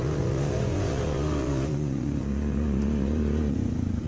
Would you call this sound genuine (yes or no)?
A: no